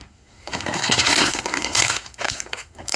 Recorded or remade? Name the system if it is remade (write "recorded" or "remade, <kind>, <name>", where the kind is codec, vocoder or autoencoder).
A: remade, codec, SNAC